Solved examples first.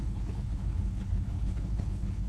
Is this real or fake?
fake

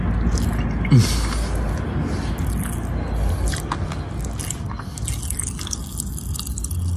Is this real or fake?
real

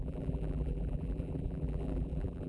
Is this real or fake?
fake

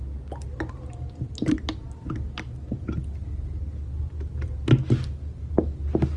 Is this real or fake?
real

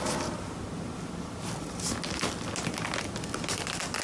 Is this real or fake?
real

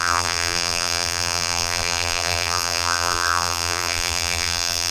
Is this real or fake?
fake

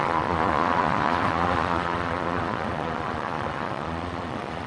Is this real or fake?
fake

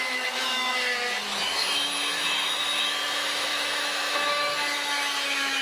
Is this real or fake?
fake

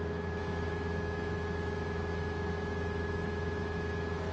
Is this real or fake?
fake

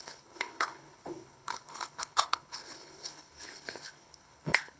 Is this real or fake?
fake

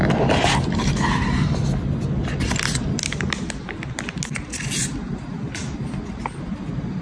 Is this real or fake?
real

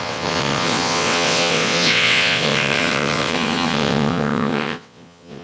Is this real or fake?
fake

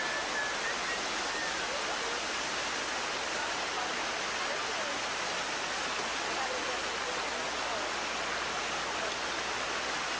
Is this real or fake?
real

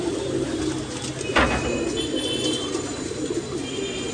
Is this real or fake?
real